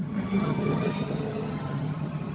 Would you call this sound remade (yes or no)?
yes